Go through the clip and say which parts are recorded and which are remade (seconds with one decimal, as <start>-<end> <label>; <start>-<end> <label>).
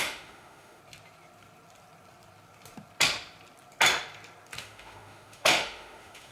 0.0-0.8 remade; 0.8-4.6 recorded; 4.6-6.3 remade